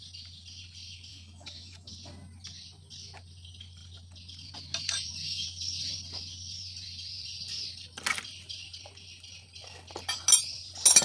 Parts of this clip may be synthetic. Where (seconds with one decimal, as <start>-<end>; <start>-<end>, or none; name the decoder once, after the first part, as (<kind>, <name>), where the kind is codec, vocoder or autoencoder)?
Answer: 1.1-1.9 (autoencoder, DAC-VAE)